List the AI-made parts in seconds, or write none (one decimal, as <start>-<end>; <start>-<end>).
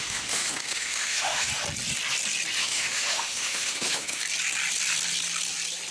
0.0-1.5; 2.6-4.2